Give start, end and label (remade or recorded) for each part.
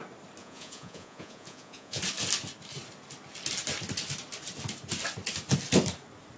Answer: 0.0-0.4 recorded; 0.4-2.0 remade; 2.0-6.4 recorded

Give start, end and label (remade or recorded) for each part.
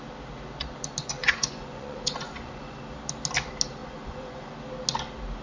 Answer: 0.0-1.2 recorded; 1.2-2.8 remade; 2.8-3.8 recorded; 3.8-4.5 remade; 4.5-5.4 recorded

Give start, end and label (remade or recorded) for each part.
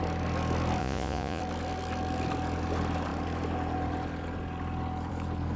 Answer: 0.0-0.8 recorded; 0.8-1.4 remade; 1.4-5.6 recorded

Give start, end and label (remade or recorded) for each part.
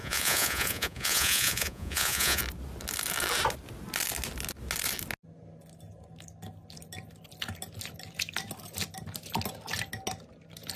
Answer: 0.0-2.4 remade; 2.4-10.8 recorded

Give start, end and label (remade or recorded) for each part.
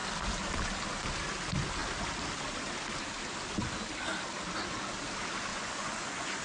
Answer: 0.0-5.5 recorded; 5.5-6.4 remade